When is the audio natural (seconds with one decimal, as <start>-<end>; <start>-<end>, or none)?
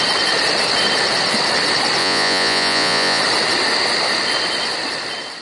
0.0-2.0; 3.2-5.4